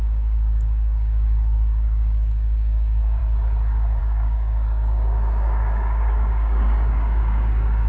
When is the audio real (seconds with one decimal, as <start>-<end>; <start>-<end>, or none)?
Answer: 3.2-4.0

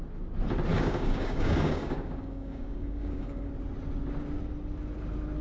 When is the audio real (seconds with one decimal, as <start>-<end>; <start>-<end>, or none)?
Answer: 0.0-0.7; 3.5-5.4

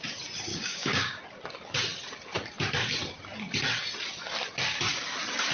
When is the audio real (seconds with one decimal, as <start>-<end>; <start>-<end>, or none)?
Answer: 0.0-0.5; 1.2-5.5

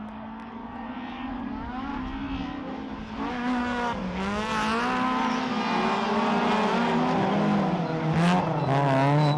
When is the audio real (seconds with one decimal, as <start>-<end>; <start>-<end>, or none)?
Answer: 0.6-1.1; 1.9-3.3; 4.5-9.4

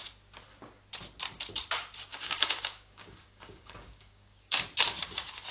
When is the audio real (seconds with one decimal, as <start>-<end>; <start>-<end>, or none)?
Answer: 0.0-2.1; 4.6-5.5

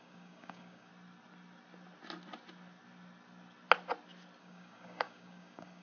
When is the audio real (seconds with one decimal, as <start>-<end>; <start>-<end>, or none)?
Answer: 0.9-4.4